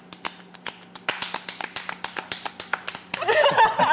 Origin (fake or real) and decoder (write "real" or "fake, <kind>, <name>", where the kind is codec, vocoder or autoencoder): real